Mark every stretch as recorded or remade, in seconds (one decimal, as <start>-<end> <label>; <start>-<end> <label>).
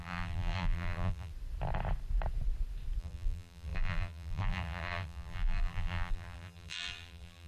0.0-1.3 remade; 1.3-3.0 recorded; 3.0-7.5 remade